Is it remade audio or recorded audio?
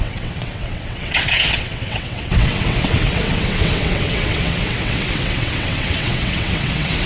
remade